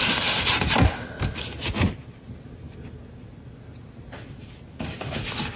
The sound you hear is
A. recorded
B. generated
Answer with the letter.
A